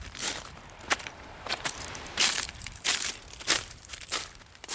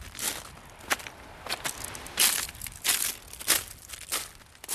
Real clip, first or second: second